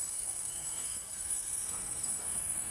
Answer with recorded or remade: remade